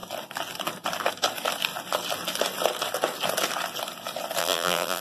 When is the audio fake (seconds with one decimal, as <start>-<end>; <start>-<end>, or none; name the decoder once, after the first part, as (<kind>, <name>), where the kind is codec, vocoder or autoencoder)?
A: 4.4-5.0 (vocoder, BigVGAN v2)